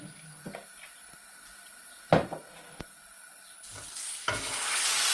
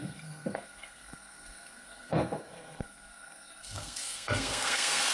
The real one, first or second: first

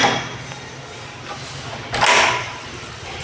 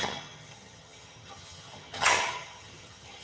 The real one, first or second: first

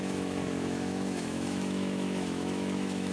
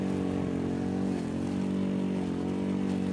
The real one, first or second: second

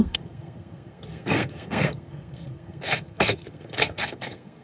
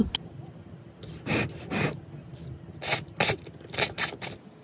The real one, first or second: second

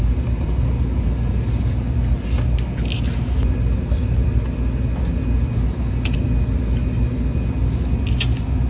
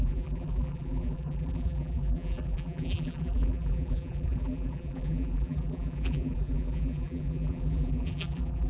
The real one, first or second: first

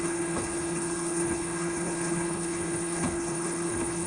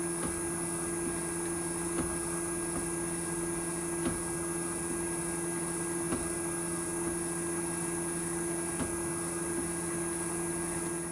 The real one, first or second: second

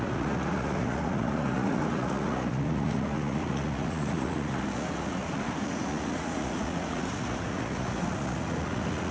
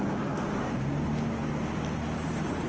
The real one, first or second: second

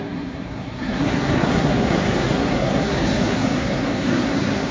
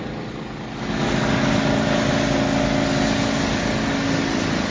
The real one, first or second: second